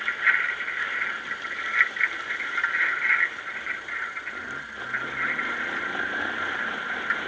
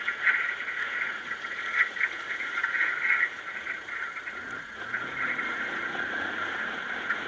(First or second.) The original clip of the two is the first